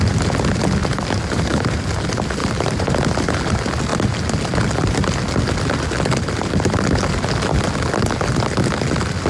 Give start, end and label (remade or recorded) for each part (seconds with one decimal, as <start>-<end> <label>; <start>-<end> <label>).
0.0-0.8 recorded; 0.8-1.9 remade; 1.9-2.4 recorded; 2.4-3.0 remade; 3.0-9.3 recorded